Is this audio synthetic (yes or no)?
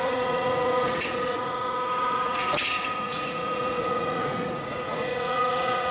yes